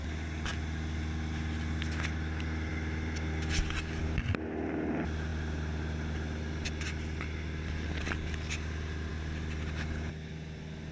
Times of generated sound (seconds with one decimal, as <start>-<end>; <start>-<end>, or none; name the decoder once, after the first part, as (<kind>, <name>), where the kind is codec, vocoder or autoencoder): none